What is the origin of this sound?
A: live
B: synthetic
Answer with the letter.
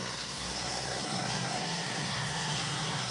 B